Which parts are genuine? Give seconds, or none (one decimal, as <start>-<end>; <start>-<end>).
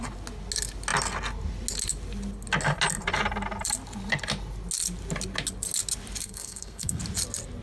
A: 0.0-6.2; 7.0-7.6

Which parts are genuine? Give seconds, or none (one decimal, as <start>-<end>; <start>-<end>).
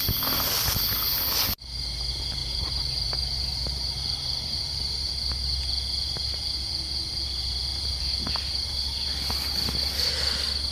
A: 0.0-2.4; 5.1-7.7; 8.3-10.7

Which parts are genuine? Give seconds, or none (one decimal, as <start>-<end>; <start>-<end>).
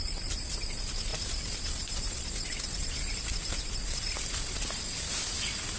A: 0.0-5.8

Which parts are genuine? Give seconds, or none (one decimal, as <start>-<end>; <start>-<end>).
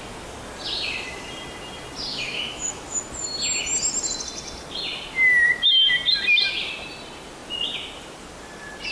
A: 0.0-2.1; 3.0-8.9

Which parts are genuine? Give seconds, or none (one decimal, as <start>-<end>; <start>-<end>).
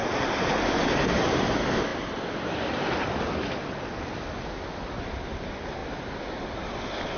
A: 0.0-7.2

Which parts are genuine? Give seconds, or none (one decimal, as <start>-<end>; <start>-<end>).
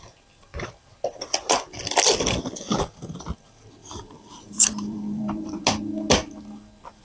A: 0.0-3.8; 5.6-7.0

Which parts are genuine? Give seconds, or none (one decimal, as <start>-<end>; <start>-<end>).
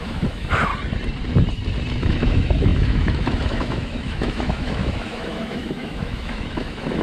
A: 0.7-2.0